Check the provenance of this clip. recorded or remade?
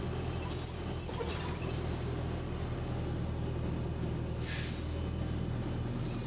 recorded